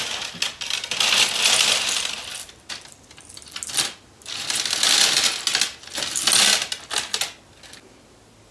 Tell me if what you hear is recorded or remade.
recorded